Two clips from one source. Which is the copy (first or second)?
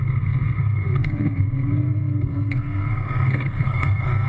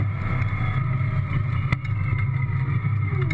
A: first